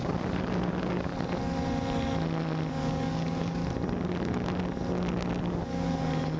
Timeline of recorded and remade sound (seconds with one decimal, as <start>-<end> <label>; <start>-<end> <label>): 0.0-1.1 remade; 1.1-2.7 recorded; 2.7-3.6 remade; 3.6-5.4 recorded; 5.4-6.4 remade